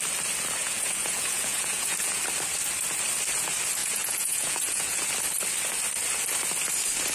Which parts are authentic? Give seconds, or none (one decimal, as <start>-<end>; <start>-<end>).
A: 0.0-0.6; 2.2-3.8; 5.1-7.1